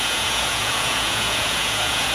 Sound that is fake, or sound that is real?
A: fake